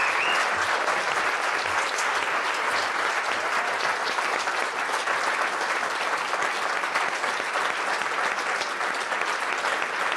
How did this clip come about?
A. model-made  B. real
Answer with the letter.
B